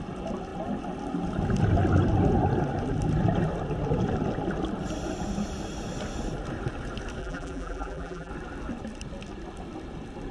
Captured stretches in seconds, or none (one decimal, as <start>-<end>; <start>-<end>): 0.0-7.2; 8.3-10.3